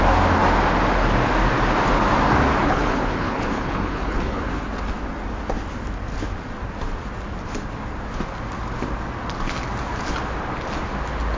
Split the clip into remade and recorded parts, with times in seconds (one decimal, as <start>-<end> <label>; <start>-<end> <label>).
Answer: 0.0-2.6 recorded; 2.6-4.7 remade; 4.7-11.4 recorded